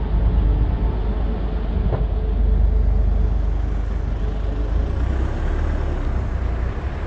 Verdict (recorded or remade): recorded